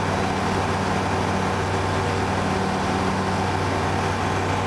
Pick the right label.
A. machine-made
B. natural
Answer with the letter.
B